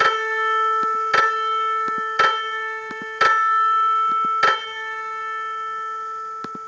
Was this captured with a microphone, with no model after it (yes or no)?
yes